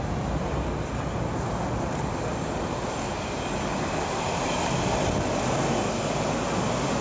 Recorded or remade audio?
recorded